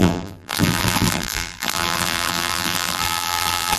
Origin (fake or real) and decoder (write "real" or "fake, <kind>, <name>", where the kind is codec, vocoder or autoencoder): fake, vocoder, BigVGAN v2